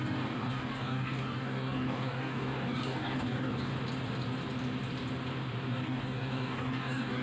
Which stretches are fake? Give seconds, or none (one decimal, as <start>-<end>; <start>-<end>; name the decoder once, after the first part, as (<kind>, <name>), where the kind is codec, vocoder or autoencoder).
0.0-3.7 (codec, DAC); 5.7-7.2